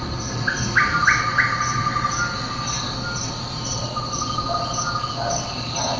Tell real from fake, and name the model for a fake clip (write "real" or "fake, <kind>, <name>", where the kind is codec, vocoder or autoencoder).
real